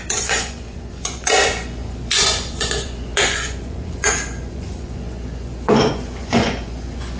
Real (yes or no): no